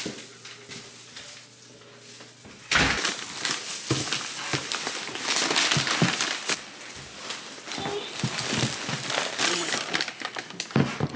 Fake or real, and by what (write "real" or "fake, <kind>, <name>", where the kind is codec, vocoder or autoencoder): real